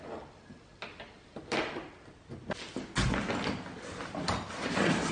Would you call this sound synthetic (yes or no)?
no